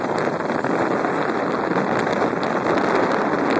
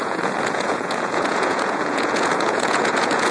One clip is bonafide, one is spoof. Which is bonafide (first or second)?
first